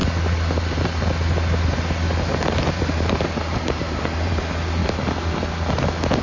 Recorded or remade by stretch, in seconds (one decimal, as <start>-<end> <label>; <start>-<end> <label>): 0.0-2.3 recorded; 2.3-4.3 remade; 4.3-6.2 recorded